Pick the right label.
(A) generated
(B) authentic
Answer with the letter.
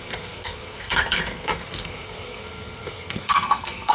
A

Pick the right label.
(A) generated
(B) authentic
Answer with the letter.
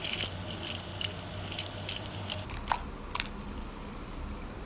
B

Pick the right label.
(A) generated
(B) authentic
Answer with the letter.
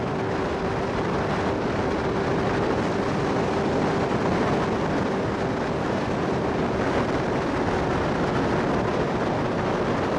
B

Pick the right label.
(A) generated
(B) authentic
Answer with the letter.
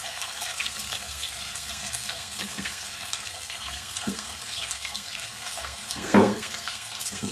A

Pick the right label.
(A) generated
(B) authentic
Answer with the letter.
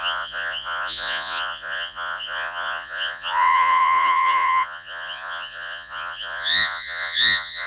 A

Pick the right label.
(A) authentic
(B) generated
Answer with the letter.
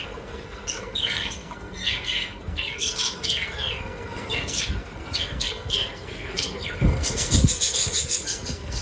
B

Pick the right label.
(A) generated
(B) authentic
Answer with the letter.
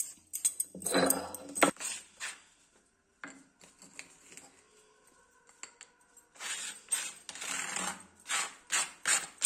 B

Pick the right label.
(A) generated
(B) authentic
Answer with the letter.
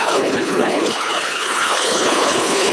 A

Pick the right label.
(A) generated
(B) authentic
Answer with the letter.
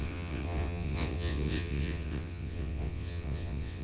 A